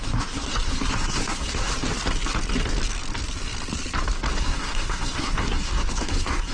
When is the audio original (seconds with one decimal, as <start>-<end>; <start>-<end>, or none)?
1.7-4.4